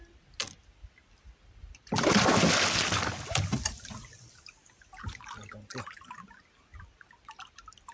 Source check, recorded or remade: recorded